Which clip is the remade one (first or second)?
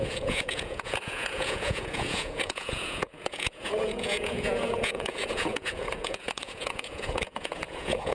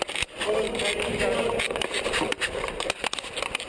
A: first